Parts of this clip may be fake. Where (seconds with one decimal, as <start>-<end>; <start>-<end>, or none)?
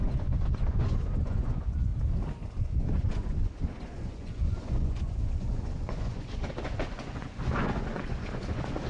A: 0.0-1.9; 2.6-8.9